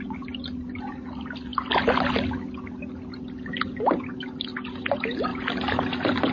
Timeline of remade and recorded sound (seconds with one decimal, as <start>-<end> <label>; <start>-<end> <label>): 0.0-6.3 recorded